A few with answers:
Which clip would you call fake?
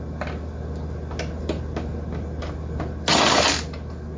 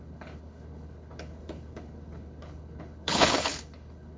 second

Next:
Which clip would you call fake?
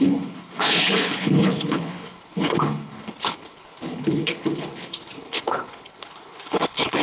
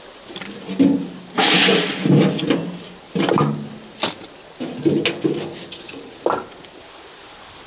first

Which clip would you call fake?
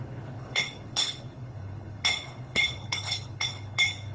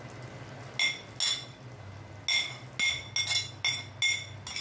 first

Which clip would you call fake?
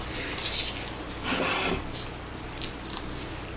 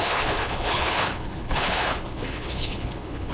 second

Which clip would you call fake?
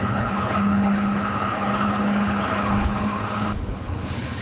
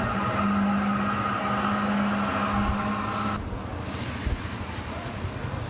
first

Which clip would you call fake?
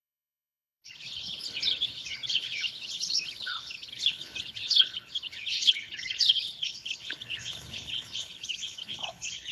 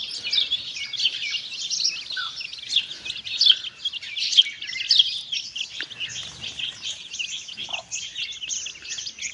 first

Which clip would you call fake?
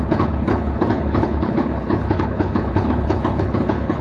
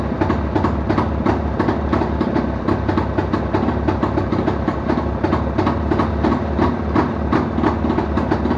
first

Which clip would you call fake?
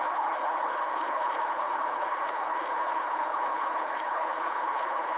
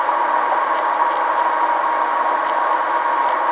first